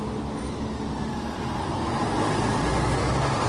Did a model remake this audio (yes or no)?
no